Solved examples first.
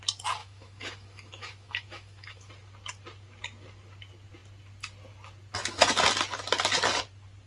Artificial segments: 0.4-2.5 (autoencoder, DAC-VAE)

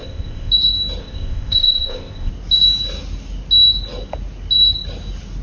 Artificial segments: 0.0-0.5 (codec, ZipCodec); 1.0-2.3